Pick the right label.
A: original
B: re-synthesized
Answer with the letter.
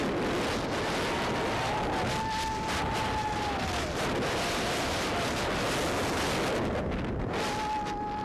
A